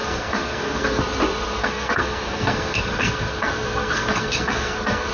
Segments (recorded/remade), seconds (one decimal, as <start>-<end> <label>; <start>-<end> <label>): 0.0-1.0 remade; 1.0-1.6 recorded; 1.6-5.1 remade